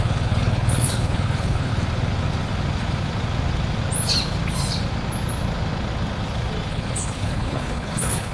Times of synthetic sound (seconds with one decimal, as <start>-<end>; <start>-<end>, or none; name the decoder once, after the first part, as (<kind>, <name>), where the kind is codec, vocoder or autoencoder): 0.0-1.7 (codec, HILCodec); 6.7-8.3